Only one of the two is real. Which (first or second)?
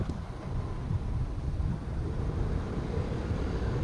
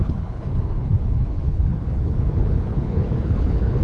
first